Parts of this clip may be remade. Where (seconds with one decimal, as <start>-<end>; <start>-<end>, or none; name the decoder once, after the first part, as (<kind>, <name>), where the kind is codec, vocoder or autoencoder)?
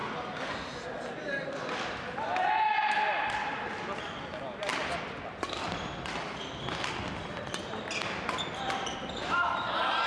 9.2-10.1 (vocoder, BigVGAN v2)